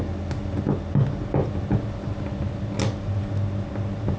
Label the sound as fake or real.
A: real